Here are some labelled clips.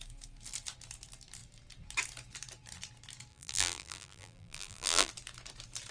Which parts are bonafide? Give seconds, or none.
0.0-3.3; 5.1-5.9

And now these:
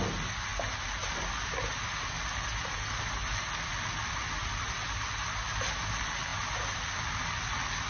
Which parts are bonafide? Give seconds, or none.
0.0-7.9

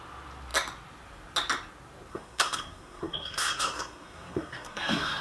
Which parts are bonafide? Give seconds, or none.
0.0-2.1

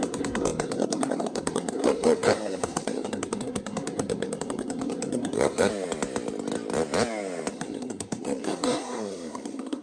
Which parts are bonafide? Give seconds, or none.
5.7-7.5